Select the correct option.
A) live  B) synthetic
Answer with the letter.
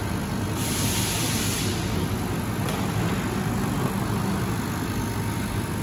A